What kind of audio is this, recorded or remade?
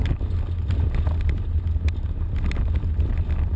recorded